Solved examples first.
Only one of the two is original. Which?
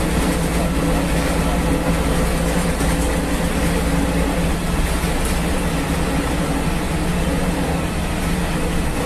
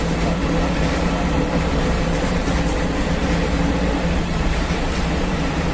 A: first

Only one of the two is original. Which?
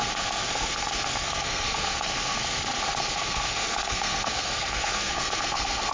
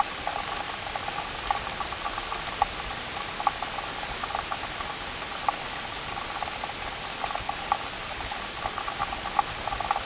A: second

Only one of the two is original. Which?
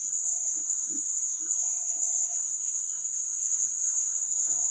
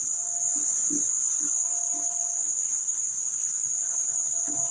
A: second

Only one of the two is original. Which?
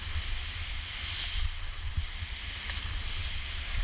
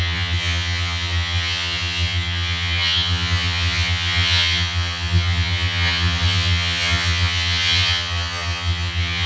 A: first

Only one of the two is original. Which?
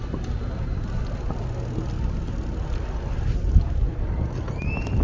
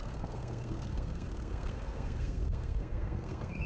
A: first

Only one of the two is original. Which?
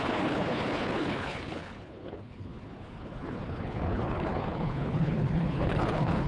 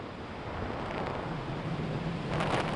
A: second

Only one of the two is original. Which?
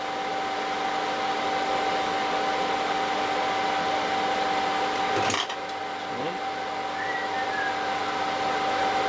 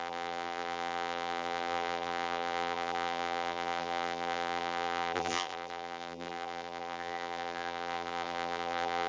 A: first